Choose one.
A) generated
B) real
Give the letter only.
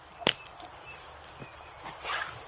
B